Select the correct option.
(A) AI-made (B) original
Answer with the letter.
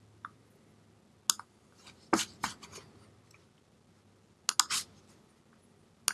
B